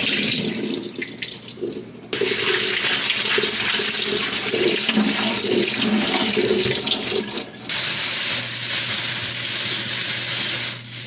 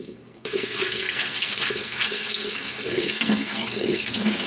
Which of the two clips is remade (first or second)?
second